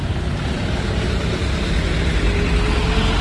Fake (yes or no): no